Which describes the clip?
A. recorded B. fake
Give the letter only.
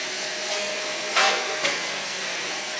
B